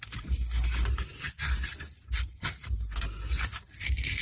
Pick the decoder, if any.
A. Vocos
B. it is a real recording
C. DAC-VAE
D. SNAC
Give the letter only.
B